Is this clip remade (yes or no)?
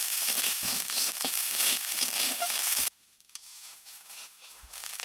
yes